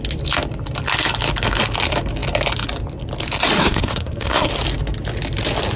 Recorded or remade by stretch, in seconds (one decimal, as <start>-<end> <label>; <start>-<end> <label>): 0.0-3.6 recorded; 3.6-4.5 remade; 4.5-5.8 recorded